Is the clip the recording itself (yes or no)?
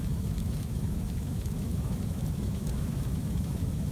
no